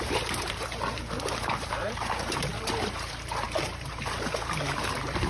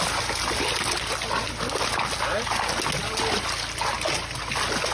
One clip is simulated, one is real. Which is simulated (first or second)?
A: first